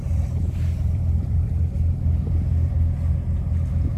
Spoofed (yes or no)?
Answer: yes